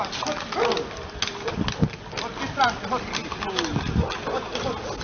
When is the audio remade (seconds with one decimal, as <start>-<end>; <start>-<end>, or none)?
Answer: none